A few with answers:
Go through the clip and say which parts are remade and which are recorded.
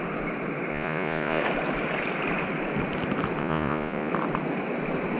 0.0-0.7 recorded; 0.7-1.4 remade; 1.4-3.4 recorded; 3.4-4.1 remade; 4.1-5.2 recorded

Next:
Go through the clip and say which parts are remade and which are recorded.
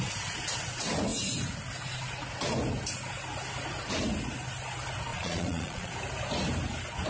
0.0-5.1 recorded; 5.1-5.9 remade; 5.9-7.1 recorded